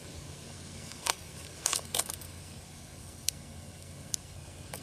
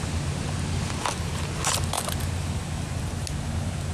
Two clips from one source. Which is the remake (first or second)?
first